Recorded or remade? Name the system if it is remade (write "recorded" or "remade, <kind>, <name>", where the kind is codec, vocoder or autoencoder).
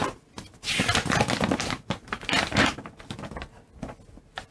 recorded